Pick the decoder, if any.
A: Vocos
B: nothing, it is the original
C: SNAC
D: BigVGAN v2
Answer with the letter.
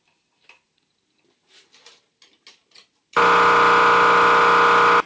B